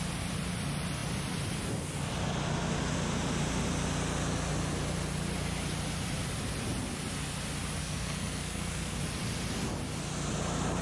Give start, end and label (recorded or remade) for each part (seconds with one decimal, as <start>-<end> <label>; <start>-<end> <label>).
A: 0.0-7.8 recorded; 7.8-9.0 remade; 9.0-10.8 recorded